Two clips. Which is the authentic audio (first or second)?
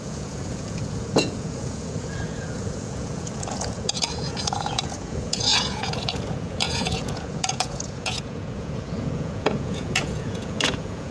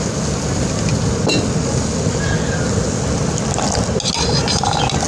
second